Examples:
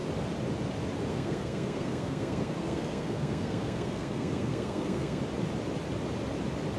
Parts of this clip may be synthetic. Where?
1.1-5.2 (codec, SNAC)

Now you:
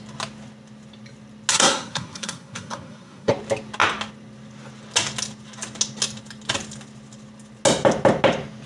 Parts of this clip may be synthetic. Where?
1.5-3.3 (codec, SNAC)

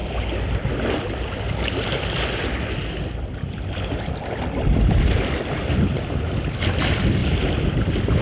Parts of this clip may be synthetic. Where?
none

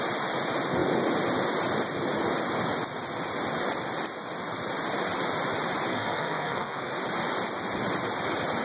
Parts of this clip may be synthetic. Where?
5.9-6.9 (codec, SNAC)